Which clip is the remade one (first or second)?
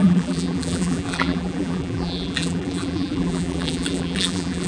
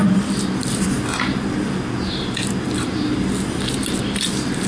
first